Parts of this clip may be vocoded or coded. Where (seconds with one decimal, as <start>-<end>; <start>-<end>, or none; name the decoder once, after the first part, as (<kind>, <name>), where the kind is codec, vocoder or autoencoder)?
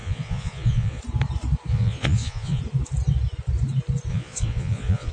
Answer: 0.0-1.0 (vocoder, Vocos); 1.7-2.6; 4.1-5.1